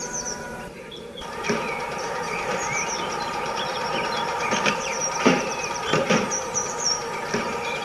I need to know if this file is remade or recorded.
remade